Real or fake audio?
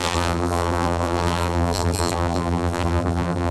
fake